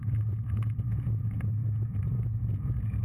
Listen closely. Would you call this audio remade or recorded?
remade